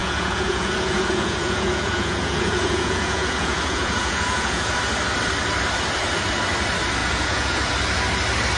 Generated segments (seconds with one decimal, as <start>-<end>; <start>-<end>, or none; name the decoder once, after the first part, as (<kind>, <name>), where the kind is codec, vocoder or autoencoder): 0.0-4.7 (vocoder, Vocos); 7.0-7.7